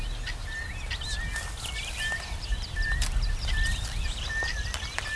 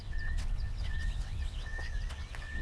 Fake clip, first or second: second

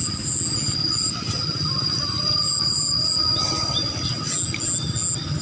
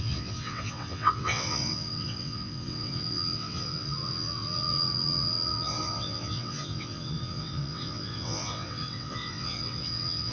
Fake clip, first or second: second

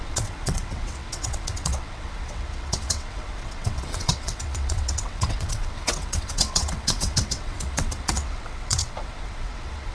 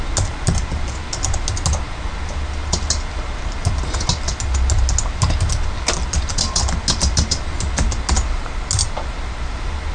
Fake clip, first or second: first